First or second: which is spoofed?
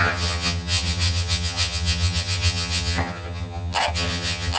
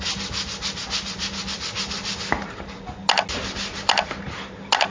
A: first